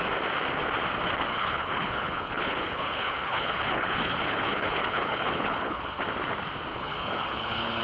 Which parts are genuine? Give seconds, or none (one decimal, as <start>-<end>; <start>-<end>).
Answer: 0.0-1.3; 6.0-6.7